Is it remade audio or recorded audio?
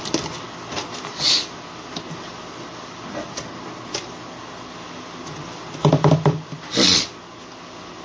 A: recorded